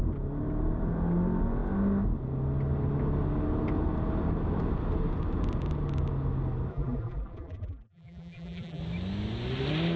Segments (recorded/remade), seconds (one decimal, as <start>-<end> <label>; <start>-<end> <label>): 0.0-6.7 recorded; 6.7-8.8 remade; 8.8-10.0 recorded